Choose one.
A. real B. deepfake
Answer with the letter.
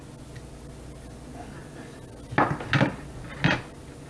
A